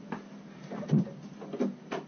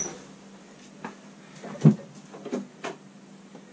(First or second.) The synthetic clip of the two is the first